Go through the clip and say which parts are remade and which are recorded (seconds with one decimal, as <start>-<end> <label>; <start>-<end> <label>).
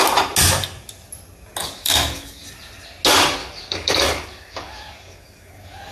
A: 0.0-1.6 recorded; 1.6-2.4 remade; 2.4-3.4 recorded; 3.4-5.9 remade